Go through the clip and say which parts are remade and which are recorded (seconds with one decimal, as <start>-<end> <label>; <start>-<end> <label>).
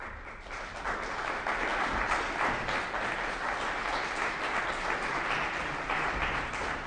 0.0-5.7 recorded; 5.7-6.5 remade; 6.5-6.9 recorded